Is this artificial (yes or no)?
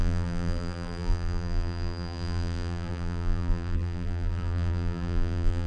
yes